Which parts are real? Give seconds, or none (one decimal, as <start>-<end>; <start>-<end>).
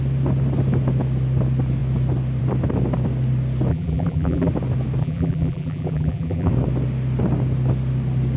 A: 0.0-3.7; 4.5-5.0; 6.5-8.4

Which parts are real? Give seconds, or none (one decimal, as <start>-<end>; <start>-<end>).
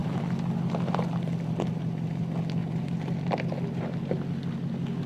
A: 0.0-2.6; 3.7-5.1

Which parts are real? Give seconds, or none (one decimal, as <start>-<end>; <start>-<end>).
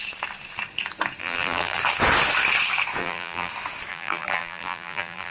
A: 0.0-1.2; 1.8-3.0; 3.5-3.9